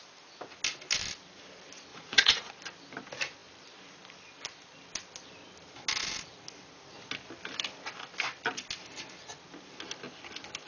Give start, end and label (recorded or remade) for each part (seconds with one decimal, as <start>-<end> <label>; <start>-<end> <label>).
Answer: 0.0-1.9 recorded; 1.9-2.5 remade; 2.5-10.7 recorded